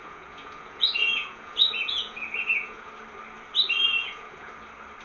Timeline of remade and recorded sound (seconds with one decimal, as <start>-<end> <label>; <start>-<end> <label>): 0.0-2.9 remade; 2.9-3.9 recorded; 3.9-4.5 remade; 4.5-5.0 recorded